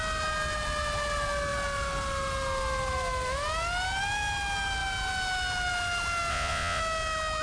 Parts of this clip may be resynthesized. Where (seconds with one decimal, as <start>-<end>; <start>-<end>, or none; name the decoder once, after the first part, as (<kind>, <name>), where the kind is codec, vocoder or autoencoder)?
6.3-6.8 (vocoder, Vocos)